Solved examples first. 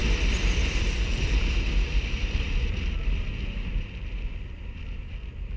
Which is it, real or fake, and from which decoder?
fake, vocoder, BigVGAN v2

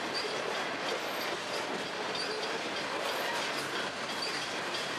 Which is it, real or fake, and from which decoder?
fake, vocoder, BigVGAN v2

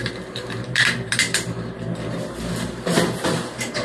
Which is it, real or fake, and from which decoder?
fake, vocoder, BigVGAN v2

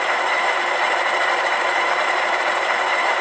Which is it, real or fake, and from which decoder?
fake, vocoder, BigVGAN v2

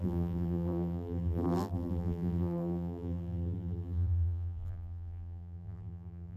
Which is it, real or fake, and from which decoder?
fake, vocoder, BigVGAN v2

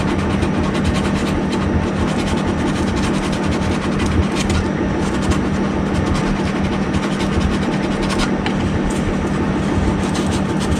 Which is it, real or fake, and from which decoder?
real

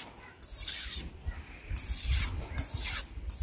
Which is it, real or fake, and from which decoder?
real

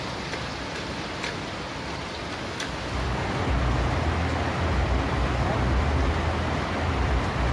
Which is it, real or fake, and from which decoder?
real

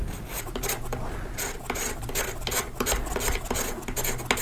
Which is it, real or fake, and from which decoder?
real